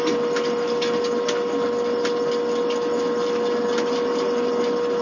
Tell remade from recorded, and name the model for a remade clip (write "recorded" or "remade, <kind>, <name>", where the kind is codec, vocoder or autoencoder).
recorded